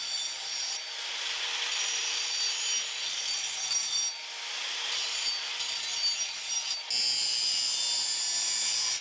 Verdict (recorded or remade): recorded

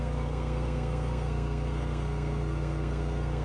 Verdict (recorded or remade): remade